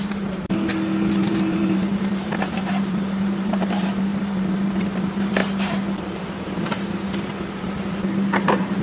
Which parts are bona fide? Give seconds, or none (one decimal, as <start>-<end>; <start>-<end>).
0.7-1.3; 5.4-8.0